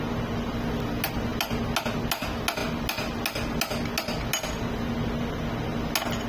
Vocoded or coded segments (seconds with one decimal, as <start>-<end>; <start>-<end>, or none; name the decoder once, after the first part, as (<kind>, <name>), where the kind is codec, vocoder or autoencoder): none